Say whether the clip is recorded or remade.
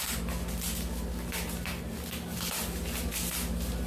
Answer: recorded